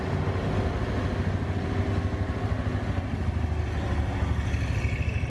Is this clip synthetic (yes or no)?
no